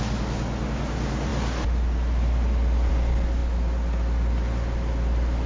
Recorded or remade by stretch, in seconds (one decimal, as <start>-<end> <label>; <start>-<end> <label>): 0.0-5.5 recorded